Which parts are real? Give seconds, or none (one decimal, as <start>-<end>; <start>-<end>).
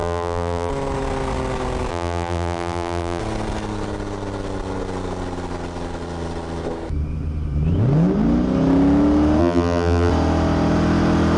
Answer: 0.7-1.9; 3.2-9.4; 10.1-11.4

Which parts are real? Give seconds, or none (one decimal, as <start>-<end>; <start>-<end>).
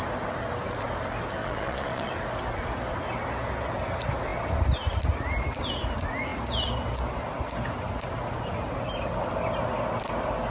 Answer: 0.0-1.4; 2.1-10.5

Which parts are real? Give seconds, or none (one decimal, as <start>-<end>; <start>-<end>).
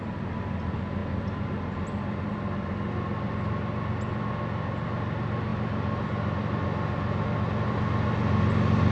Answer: 0.0-8.9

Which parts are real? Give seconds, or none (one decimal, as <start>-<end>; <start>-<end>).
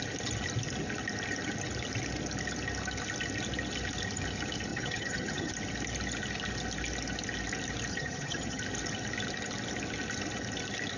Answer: 0.0-4.7; 5.5-7.9; 8.6-11.0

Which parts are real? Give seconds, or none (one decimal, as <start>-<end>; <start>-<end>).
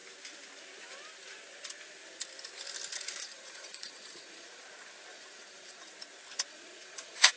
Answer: 0.0-3.2; 4.6-5.1; 5.9-6.5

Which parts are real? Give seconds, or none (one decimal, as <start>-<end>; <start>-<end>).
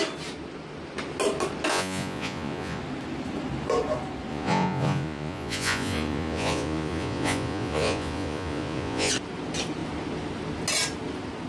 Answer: 0.0-1.7; 2.8-4.3; 9.1-11.5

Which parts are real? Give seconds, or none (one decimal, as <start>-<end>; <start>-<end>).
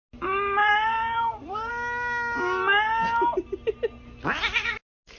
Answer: 0.0-0.6; 1.7-5.2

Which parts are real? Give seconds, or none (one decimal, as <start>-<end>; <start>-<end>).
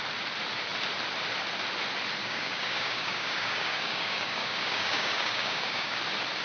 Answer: 0.0-2.2; 6.0-6.4